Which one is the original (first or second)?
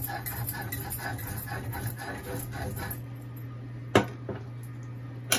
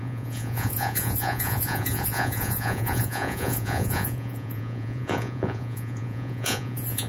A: first